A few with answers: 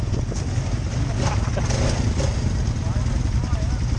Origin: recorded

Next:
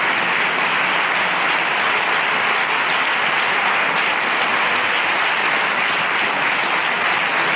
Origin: recorded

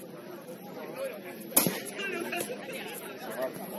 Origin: recorded